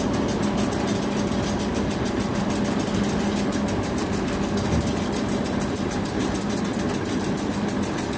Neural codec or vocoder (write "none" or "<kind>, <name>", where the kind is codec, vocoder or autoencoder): none